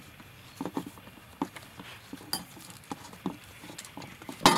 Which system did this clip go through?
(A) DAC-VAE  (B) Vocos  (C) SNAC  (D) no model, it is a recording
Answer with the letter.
D